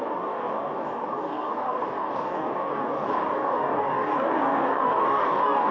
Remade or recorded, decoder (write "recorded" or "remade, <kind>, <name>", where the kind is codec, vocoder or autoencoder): remade, codec, DAC